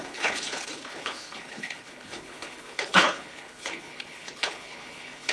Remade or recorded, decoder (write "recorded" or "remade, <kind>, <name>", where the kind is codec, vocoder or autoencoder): remade, codec, HILCodec